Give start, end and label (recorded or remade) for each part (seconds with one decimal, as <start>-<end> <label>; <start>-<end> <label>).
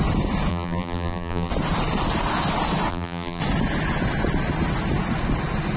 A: 0.0-0.5 recorded; 0.5-1.5 remade; 1.5-2.9 recorded; 2.9-3.4 remade; 3.4-5.8 recorded